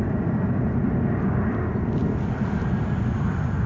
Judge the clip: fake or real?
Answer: real